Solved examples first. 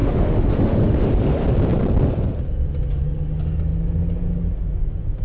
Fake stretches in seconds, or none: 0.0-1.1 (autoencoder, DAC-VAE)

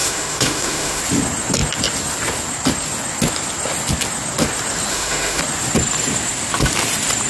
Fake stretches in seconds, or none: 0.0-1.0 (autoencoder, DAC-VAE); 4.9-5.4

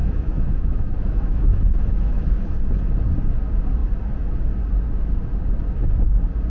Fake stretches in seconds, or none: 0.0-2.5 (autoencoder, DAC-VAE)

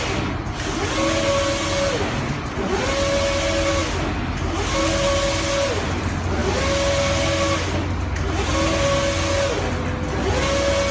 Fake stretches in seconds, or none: none

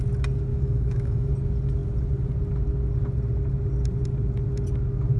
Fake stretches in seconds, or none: 0.5-1.3 (autoencoder, DAC-VAE)